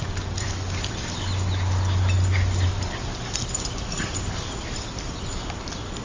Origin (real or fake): real